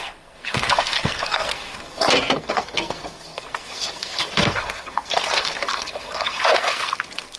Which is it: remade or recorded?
remade